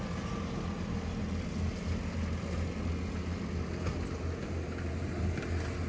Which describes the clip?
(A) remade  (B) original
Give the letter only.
B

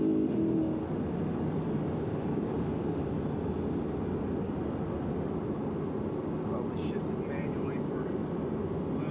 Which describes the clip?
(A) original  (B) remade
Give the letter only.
A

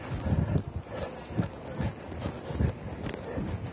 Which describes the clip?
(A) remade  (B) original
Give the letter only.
B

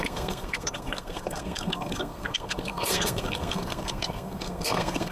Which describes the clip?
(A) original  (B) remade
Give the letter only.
B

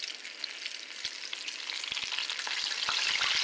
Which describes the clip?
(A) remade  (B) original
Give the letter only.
B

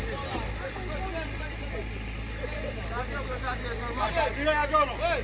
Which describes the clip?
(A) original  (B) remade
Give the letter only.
A